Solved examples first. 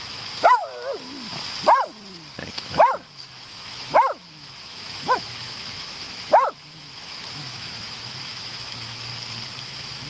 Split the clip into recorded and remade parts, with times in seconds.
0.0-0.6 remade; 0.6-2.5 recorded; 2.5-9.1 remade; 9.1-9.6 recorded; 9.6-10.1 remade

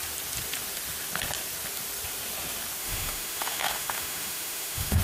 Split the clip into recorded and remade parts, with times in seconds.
0.0-2.8 recorded; 2.8-5.0 remade

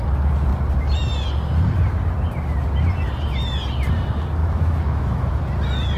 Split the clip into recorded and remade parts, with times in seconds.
0.0-4.4 recorded; 4.4-5.4 remade; 5.4-6.0 recorded